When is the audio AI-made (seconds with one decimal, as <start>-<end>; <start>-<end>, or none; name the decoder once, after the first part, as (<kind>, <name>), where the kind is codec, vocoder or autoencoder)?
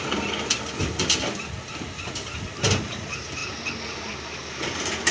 none